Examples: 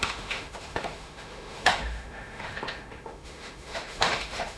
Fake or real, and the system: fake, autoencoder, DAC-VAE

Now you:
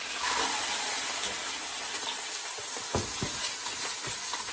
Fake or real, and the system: real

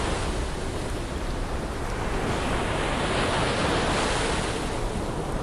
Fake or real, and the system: real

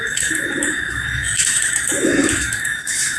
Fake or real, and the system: fake, autoencoder, DAC-VAE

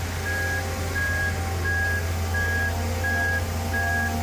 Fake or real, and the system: real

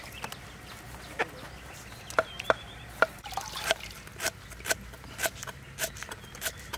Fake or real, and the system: real